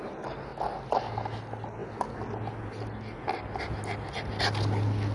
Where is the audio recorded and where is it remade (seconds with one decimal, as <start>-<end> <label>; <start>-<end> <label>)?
0.0-5.1 recorded